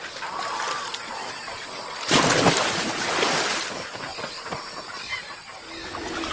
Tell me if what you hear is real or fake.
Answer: real